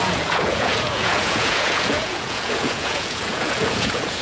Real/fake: fake